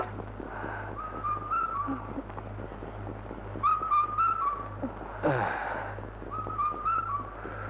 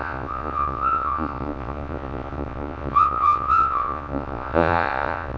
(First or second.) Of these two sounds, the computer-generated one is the second